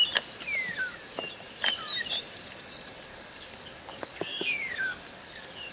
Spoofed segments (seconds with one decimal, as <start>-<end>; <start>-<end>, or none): 3.1-5.7